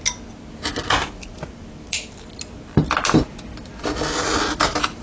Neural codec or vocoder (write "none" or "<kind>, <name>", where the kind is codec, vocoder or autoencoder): none